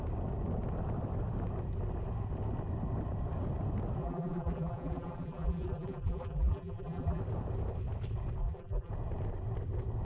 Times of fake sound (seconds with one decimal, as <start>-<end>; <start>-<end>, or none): 4.0-7.2; 8.4-8.9